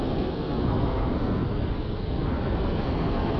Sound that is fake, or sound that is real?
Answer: fake